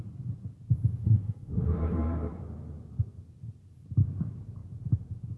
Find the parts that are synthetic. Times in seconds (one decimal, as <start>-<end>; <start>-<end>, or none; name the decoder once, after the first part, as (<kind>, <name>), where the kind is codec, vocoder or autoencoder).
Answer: 1.0-2.4 (codec, SNAC)